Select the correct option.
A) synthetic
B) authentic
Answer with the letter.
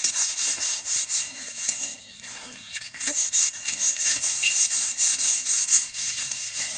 A